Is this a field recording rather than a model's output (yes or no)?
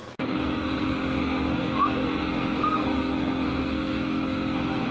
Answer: no